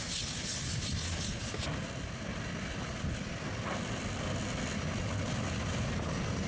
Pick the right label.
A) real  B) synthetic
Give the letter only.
A